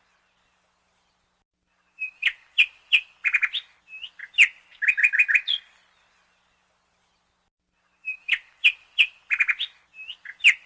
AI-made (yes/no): no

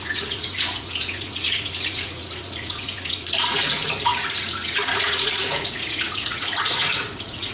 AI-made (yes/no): yes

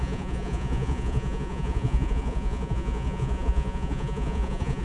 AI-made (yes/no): yes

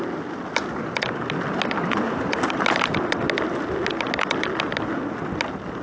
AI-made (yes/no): no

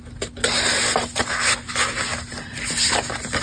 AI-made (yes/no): no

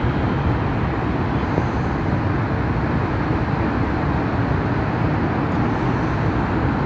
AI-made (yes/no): no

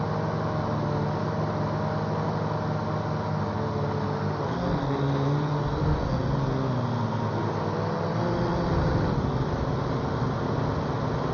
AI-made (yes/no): no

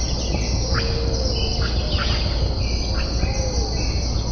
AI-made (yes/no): no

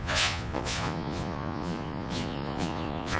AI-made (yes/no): yes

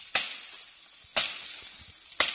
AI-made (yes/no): no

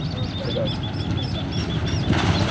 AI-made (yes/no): no